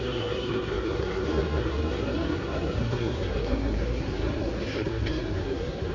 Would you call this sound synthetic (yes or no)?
yes